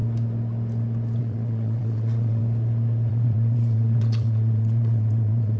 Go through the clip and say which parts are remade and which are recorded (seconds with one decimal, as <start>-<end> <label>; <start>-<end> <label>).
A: 0.0-1.2 recorded; 1.2-2.4 remade; 2.4-3.1 recorded; 3.1-5.6 remade

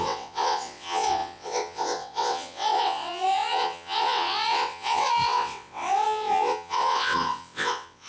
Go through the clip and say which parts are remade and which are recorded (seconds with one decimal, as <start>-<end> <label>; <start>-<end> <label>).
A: 0.0-8.1 remade

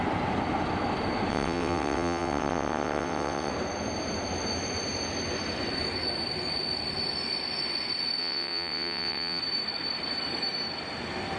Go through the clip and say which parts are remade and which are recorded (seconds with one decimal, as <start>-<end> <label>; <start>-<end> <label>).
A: 0.0-1.3 recorded; 1.3-3.5 remade; 3.5-8.2 recorded; 8.2-9.4 remade; 9.4-11.4 recorded

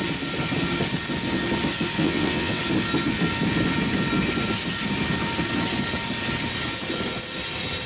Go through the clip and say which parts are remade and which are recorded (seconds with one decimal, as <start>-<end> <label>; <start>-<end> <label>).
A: 0.0-2.0 recorded; 2.0-2.6 remade; 2.6-7.9 recorded

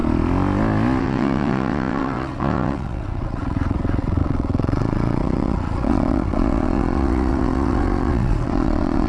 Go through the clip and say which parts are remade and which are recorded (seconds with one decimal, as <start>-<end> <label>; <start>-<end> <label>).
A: 0.0-1.0 recorded; 1.0-9.1 remade